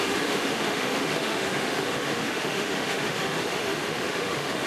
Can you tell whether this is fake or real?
fake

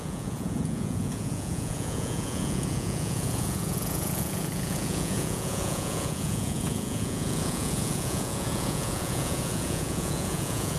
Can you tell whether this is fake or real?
fake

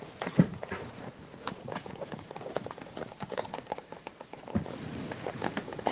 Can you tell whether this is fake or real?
fake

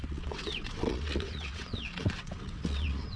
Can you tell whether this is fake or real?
fake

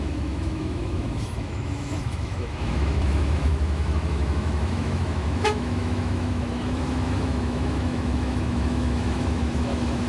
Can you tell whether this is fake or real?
fake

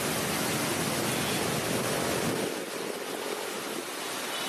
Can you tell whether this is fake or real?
real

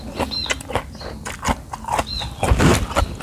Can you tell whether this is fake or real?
real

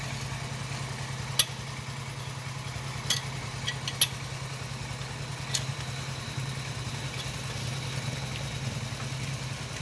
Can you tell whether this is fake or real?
real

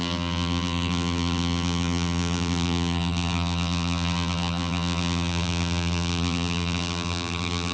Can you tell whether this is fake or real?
fake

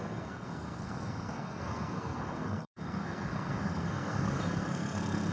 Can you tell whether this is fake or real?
fake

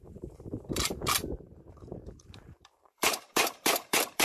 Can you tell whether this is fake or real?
fake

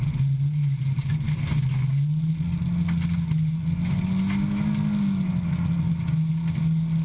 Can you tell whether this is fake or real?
real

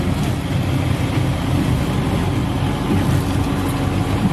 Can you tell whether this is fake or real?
real